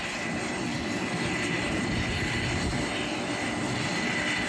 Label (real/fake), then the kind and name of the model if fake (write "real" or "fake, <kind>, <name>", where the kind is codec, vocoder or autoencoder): real